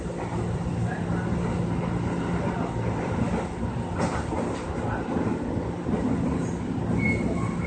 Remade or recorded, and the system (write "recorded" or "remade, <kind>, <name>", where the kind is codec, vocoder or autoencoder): recorded